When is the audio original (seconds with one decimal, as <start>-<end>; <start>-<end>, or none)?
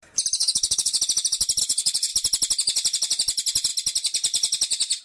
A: 0.0-0.4; 1.0-1.6; 2.1-5.0